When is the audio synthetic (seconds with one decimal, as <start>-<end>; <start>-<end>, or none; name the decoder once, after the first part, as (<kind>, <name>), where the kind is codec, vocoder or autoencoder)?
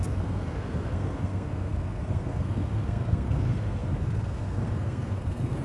0.0-5.6 (codec, SNAC)